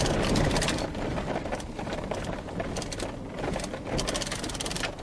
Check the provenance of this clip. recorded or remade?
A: recorded